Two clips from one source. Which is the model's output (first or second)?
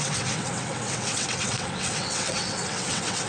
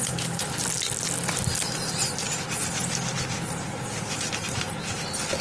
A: first